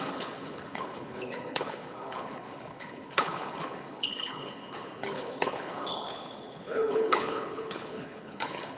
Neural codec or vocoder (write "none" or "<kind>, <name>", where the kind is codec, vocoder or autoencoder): codec, HILCodec